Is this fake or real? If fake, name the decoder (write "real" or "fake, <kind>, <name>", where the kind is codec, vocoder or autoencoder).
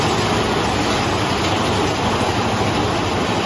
real